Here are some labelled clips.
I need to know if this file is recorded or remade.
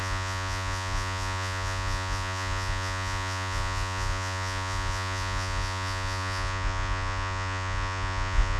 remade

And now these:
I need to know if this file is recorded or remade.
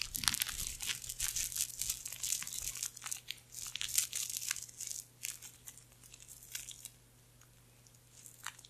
recorded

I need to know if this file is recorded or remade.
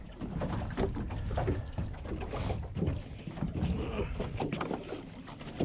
recorded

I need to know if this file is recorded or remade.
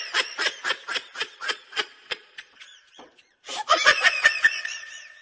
remade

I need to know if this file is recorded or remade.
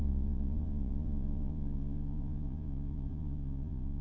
remade